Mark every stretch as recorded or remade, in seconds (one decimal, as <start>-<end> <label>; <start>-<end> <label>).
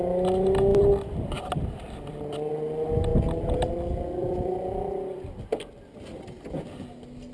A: 0.0-0.7 recorded; 0.7-2.5 remade; 2.5-4.2 recorded; 4.2-6.0 remade; 6.0-7.3 recorded